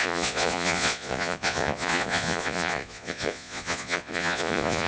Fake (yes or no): yes